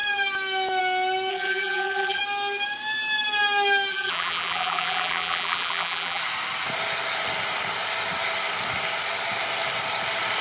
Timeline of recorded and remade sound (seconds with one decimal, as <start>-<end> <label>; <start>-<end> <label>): 0.0-1.3 recorded; 1.3-2.2 remade; 2.2-3.9 recorded; 3.9-6.2 remade; 6.2-10.4 recorded